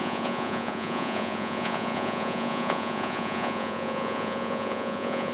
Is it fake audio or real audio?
fake